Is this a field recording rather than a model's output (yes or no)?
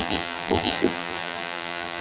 no